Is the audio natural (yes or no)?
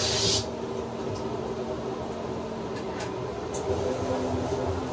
yes